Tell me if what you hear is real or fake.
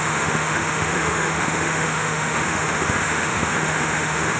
fake